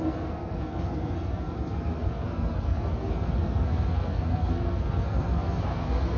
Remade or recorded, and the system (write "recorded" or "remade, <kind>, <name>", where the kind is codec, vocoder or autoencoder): remade, codec, SNAC